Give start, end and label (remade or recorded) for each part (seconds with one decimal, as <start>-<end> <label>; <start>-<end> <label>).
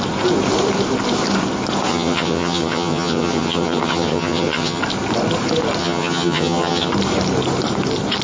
0.0-1.9 recorded; 1.9-4.8 remade; 4.8-5.8 recorded; 5.8-6.9 remade; 6.9-8.2 recorded